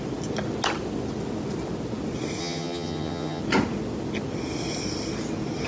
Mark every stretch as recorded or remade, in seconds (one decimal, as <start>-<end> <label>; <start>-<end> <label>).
0.0-2.4 recorded; 2.4-3.4 remade; 3.4-5.7 recorded